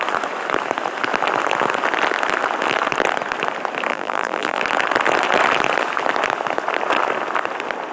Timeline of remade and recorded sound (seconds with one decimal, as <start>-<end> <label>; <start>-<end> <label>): 0.0-3.9 recorded; 3.9-4.6 remade; 4.6-7.9 recorded